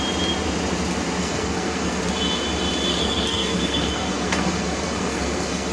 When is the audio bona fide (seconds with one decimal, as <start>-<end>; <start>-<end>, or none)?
0.0-1.2; 2.0-2.9